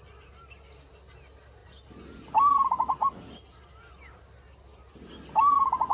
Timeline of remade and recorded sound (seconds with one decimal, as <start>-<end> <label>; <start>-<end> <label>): 0.0-5.9 recorded